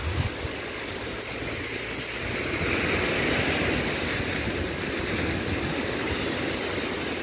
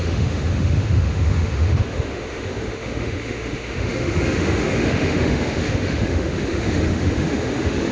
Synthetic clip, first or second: second